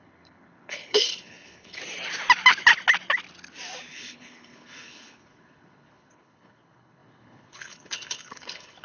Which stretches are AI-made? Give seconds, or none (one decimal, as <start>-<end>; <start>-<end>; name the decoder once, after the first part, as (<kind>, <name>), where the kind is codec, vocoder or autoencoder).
0.0-1.8 (codec, HILCodec); 3.9-8.8